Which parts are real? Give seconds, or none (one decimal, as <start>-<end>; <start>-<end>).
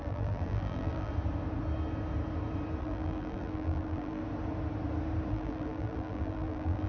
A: 1.1-2.8; 4.2-5.3